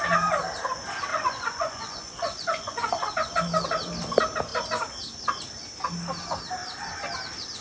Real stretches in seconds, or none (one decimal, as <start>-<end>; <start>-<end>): 0.0-1.1; 2.8-7.6